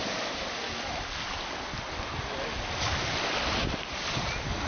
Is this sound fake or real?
real